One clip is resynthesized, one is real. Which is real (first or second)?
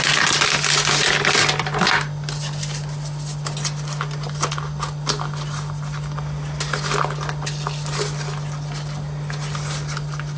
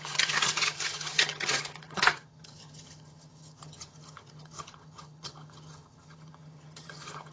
first